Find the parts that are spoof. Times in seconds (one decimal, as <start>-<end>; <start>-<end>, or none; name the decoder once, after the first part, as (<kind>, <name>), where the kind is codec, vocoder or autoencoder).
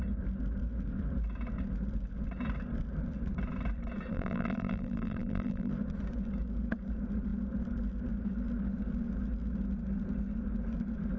4.1-5.7 (vocoder, BigVGAN v2)